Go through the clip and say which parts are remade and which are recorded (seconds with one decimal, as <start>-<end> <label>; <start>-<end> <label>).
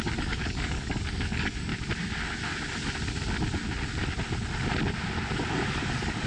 0.0-1.7 remade; 1.7-5.5 recorded; 5.5-6.3 remade